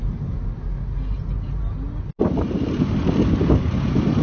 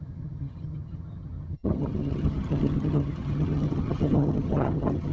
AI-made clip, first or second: second